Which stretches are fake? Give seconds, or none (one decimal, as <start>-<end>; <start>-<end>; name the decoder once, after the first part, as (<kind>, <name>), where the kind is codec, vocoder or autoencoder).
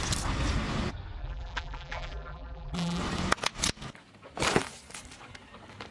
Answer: 1.2-3.0 (vocoder, BigVGAN v2)